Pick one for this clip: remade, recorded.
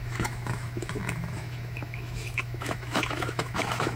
remade